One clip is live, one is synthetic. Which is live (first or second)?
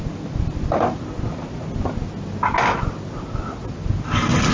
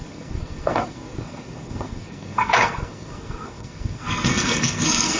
first